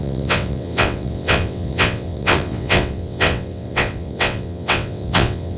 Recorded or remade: remade